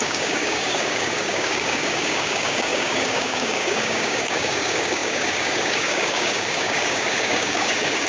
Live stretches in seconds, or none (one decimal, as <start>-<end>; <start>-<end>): none